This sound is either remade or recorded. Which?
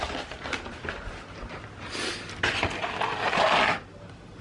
recorded